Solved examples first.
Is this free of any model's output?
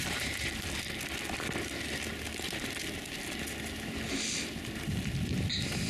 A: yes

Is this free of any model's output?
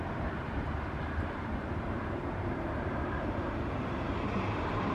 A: no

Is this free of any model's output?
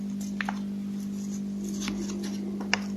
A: yes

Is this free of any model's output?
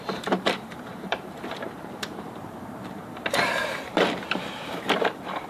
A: no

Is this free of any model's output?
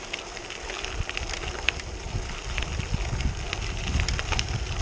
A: yes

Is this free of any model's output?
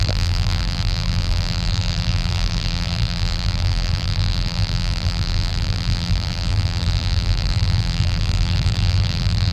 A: no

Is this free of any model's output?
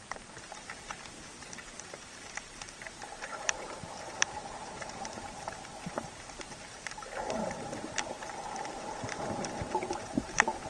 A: no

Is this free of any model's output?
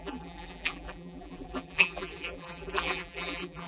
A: no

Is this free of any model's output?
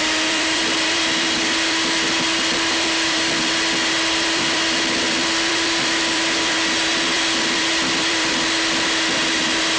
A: no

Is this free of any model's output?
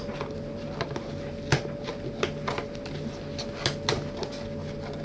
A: yes